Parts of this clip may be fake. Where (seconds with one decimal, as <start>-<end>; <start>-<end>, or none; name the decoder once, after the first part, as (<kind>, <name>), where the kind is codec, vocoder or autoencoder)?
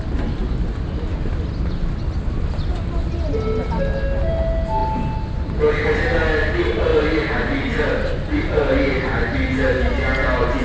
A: none